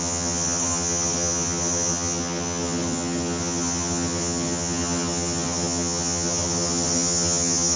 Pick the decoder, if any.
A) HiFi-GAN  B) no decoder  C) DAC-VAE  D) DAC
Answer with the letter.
A